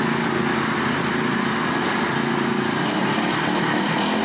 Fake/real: real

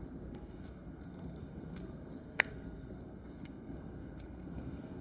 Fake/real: fake